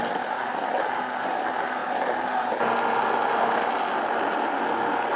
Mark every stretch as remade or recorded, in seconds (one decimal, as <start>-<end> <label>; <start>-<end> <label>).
0.0-5.2 recorded